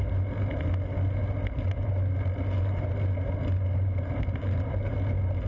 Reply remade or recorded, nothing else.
recorded